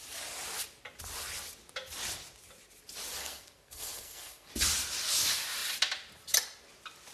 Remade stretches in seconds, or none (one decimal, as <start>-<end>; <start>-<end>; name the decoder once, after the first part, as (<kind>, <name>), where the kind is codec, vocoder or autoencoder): 3.2-4.5 (codec, SNAC)